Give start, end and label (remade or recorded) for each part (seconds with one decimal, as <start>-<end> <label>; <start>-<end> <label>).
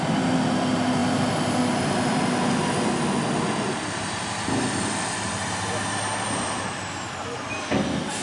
0.0-8.2 recorded